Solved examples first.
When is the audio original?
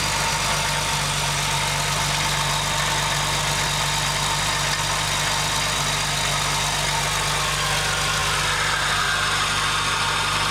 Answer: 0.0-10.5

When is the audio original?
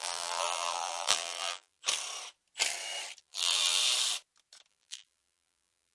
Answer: 1.8-3.2; 3.8-4.7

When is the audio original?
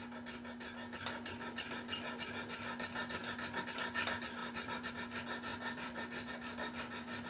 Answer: 0.0-4.4; 4.9-5.5; 6.3-7.3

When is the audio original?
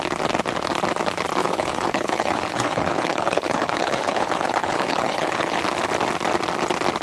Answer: 0.0-1.4; 5.6-7.0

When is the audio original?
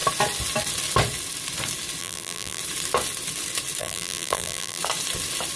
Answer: 0.0-2.0; 2.6-3.8; 4.8-5.6